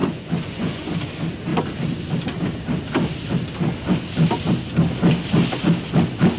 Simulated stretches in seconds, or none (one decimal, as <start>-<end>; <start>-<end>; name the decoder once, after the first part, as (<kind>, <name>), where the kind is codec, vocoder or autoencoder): 0.0-0.9 (vocoder, Vocos)